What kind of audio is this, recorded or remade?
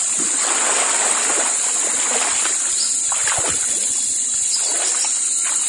recorded